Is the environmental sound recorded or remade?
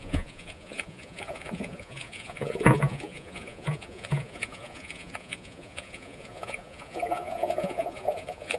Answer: remade